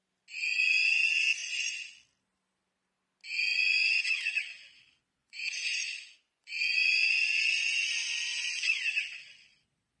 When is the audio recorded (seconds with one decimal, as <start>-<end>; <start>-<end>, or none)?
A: 0.0-3.5; 4.5-5.2; 6.5-10.0